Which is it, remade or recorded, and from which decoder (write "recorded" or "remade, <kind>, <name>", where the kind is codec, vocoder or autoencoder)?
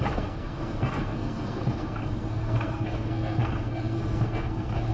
remade, codec, SNAC